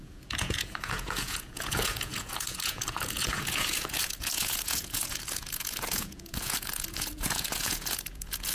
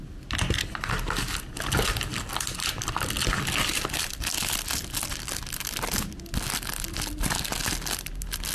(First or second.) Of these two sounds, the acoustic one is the second